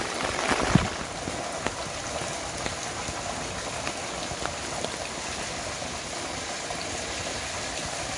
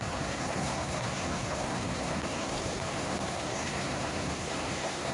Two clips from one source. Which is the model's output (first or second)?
second